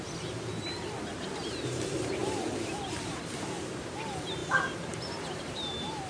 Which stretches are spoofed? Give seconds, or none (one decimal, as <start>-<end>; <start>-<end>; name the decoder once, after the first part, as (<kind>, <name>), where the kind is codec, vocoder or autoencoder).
0.0-0.5 (vocoder, BigVGAN v2); 1.2-6.1